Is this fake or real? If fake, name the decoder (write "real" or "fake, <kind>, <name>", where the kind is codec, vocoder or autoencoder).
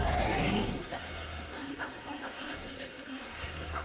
fake, codec, SNAC